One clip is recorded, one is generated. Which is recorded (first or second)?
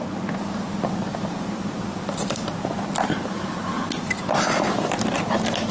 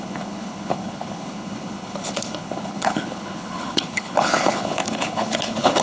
first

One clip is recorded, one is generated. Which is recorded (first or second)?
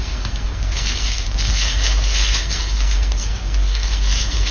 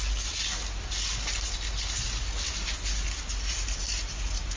second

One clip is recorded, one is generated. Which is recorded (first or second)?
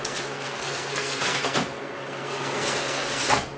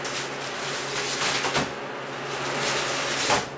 second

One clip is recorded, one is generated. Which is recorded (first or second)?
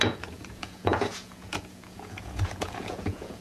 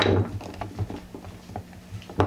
second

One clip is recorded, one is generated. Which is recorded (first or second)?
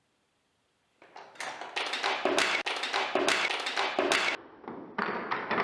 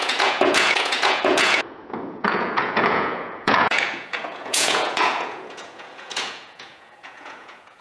first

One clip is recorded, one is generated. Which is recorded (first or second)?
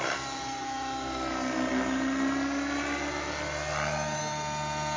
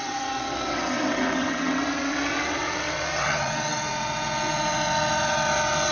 first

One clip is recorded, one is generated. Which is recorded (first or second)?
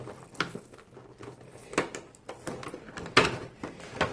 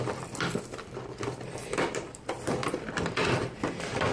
first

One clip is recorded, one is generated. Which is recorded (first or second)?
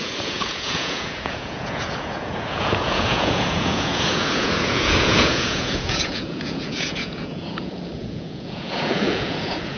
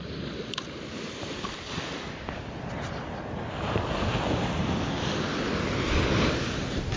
second